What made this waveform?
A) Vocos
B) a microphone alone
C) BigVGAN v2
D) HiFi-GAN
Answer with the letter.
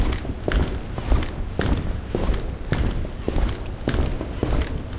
B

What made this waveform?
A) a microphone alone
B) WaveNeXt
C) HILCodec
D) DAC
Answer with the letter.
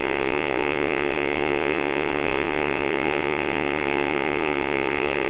B